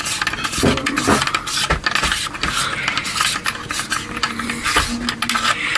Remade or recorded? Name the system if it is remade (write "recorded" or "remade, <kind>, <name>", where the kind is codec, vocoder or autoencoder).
recorded